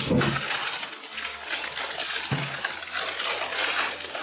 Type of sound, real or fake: real